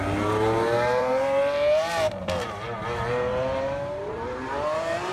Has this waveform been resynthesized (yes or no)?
yes